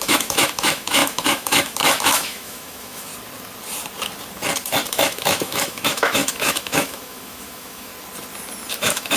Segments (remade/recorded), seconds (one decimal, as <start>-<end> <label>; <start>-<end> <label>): 0.0-3.1 remade; 3.1-4.9 recorded; 4.9-7.9 remade; 7.9-8.7 recorded; 8.7-9.2 remade